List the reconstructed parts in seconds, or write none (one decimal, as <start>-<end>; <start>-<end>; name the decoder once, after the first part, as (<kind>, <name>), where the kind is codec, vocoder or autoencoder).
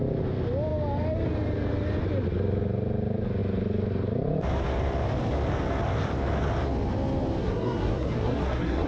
7.4-8.9 (codec, SNAC)